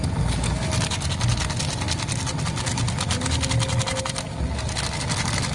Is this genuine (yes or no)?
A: yes